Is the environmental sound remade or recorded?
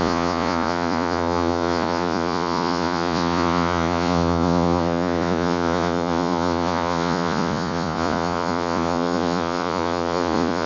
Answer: remade